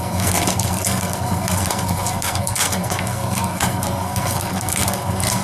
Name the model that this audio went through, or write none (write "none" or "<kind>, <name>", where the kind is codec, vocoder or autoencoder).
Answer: codec, SNAC